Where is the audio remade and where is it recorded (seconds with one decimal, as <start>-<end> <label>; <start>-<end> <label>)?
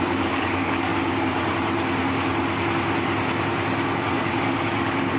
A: 0.0-0.9 remade; 0.9-4.0 recorded; 4.0-5.2 remade